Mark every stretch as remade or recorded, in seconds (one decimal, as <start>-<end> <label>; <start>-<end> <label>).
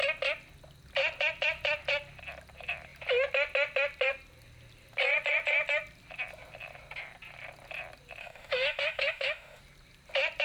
0.0-8.2 recorded; 8.2-9.6 remade; 9.6-10.4 recorded